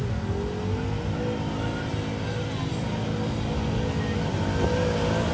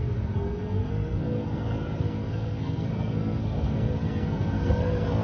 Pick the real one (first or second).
first